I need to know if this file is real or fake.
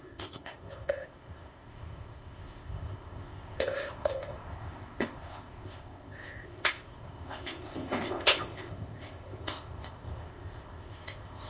fake